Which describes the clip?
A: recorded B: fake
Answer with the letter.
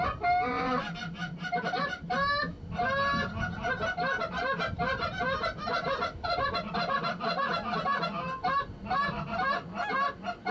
A